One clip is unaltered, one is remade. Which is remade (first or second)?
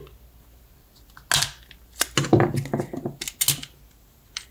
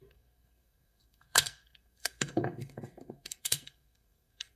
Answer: second